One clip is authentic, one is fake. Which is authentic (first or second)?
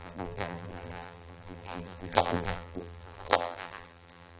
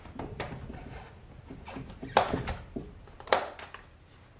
second